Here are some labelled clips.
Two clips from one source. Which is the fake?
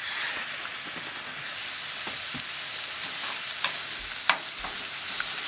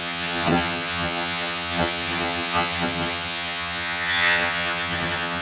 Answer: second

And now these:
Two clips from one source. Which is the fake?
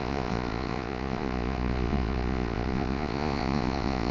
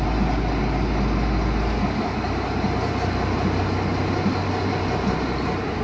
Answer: first